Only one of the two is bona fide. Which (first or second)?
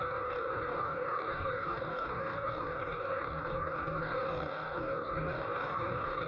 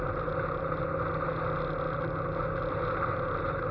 second